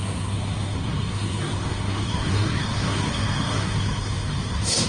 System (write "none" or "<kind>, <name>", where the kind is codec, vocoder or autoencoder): codec, SNAC